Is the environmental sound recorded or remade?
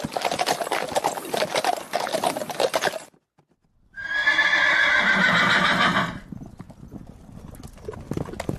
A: recorded